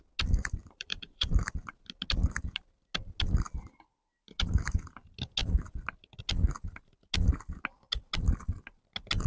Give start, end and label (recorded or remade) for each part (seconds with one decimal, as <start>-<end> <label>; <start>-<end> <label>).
0.0-0.6 recorded; 0.6-1.5 remade; 1.5-9.3 recorded